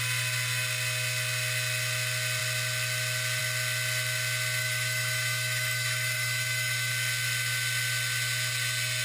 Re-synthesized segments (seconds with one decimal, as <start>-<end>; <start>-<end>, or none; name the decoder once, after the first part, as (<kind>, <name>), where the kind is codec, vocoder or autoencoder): 4.6-6.9 (autoencoder, DAC-VAE)